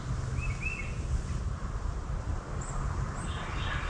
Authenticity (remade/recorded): recorded